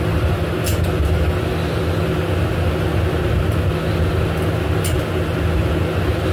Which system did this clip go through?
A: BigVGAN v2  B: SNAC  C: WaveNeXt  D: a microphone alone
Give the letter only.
D